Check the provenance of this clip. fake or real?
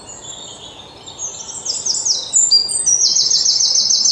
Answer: real